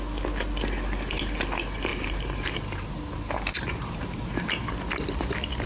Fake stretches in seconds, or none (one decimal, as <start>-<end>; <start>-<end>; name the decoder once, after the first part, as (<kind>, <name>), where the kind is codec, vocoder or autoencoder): 1.9-4.8 (vocoder, BigVGAN v2)